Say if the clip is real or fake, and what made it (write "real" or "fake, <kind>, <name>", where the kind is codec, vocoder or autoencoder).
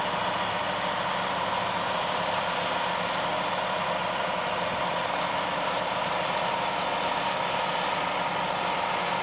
real